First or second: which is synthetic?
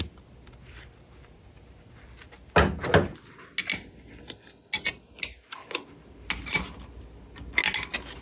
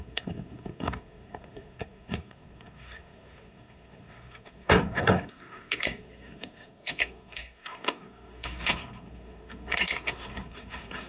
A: second